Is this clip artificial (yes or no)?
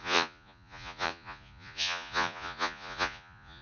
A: yes